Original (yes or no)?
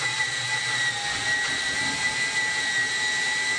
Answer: yes